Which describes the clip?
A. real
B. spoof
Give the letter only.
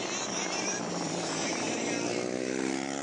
B